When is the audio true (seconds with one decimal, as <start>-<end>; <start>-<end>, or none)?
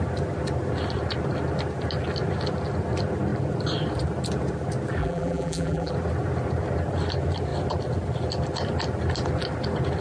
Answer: 0.0-5.0; 5.9-10.0